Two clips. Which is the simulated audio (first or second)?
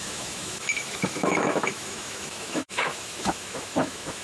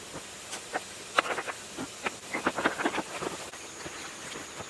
first